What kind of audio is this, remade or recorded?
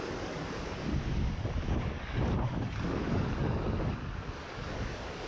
remade